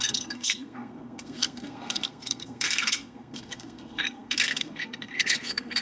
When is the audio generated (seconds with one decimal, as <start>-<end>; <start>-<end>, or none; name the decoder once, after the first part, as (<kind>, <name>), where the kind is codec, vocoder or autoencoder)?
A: 0.0-5.8 (codec, SNAC)

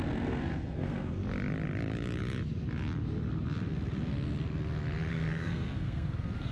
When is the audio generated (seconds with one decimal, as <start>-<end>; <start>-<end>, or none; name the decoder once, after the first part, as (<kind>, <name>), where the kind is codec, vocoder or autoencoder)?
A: 0.0-1.2 (codec, SNAC); 5.1-6.5

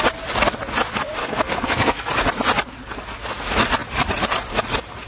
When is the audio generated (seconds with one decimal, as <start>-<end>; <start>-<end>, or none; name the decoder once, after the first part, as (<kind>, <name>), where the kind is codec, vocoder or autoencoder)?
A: 1.2-2.1 (codec, SNAC)

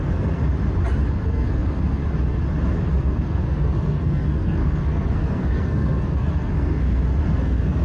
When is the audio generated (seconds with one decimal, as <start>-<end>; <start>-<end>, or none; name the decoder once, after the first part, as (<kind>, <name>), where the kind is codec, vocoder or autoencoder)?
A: 0.0-0.4 (codec, SNAC); 1.1-2.0; 2.9-7.8

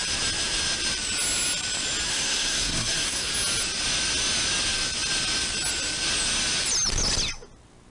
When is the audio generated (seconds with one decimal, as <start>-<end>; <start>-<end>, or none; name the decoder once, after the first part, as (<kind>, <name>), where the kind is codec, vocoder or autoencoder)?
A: 2.1-3.3 (codec, SNAC)

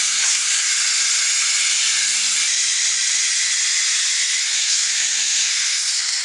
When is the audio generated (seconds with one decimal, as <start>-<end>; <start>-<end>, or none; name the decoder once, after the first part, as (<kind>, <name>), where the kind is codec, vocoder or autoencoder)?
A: 0.0-0.7 (codec, SNAC); 4.4-6.2

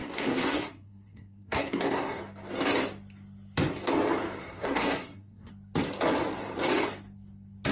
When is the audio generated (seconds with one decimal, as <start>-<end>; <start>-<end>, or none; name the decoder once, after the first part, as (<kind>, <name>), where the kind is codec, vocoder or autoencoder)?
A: 0.0-2.2 (codec, SNAC); 4.4-5.5